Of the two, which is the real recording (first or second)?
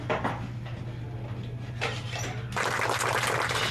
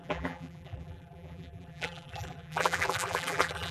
first